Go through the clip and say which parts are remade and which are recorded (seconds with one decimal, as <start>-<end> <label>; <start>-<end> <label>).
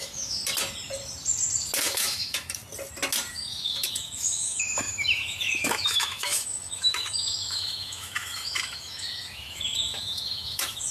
0.0-0.4 remade; 0.4-1.8 recorded; 1.8-2.6 remade; 2.6-3.3 recorded; 3.3-10.9 remade